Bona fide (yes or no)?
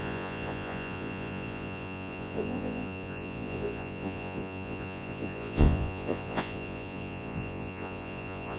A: no